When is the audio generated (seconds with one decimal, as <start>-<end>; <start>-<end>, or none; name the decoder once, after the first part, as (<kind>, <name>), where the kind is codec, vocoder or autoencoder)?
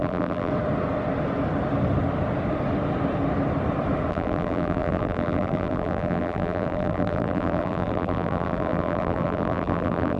0.0-0.5 (vocoder, BigVGAN v2); 4.1-10.2